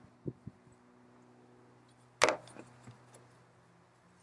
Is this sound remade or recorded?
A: recorded